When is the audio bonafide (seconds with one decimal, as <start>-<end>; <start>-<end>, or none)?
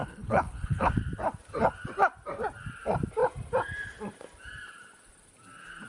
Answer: 0.9-5.9